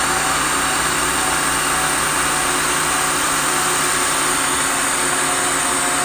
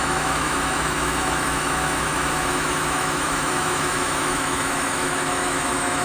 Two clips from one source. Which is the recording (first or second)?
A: first